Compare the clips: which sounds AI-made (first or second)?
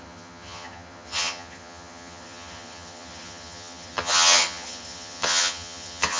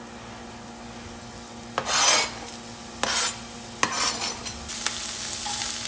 first